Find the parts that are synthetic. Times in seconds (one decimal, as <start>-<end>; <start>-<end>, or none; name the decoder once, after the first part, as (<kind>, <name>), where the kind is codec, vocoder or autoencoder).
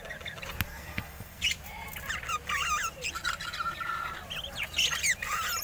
0.7-1.4 (codec, SNAC)